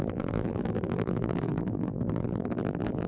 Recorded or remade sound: remade